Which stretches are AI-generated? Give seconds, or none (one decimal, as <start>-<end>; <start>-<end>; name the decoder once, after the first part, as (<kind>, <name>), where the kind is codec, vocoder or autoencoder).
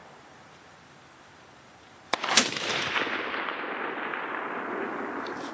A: 0.0-2.9 (vocoder, BigVGAN v2)